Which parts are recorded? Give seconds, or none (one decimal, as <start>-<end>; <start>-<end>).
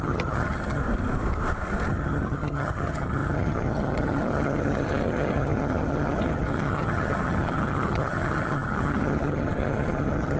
0.8-1.9